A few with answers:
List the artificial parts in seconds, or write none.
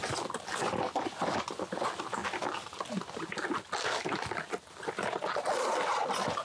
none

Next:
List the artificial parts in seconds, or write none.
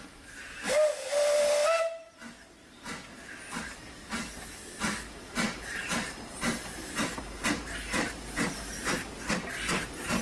none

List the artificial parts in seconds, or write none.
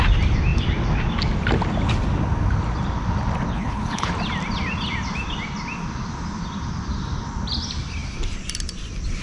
3.5-4.1 (codec, HILCodec)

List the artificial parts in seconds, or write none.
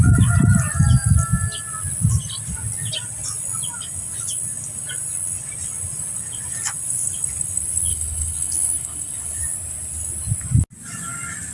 7.9-9.4 (codec, HILCodec)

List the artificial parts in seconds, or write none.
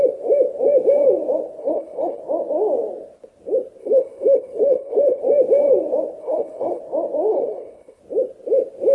1.6-2.2 (codec, HILCodec); 3.8-5.2; 6.2-6.8; 7.3-8.0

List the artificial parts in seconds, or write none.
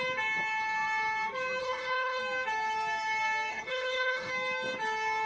1.6-2.2 (codec, HILCodec); 3.5-4.3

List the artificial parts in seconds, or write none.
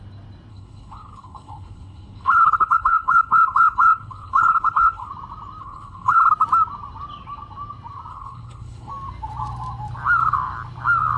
0.5-5.1 (codec, HILCodec); 5.6-6.3; 8.1-8.9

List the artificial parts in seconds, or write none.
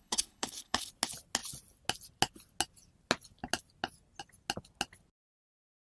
0.0-0.9 (codec, HILCodec)